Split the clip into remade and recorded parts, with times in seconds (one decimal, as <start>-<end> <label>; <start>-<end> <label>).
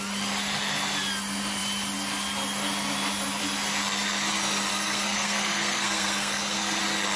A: 0.0-4.7 recorded; 4.7-6.8 remade; 6.8-7.2 recorded